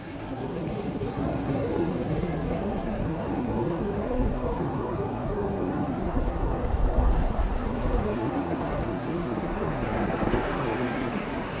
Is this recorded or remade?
remade